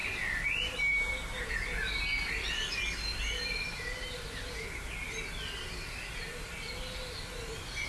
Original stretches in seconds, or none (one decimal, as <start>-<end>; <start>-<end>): 1.5-7.9